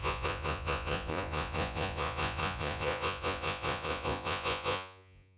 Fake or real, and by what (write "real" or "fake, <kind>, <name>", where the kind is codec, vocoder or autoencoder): fake, vocoder, Vocos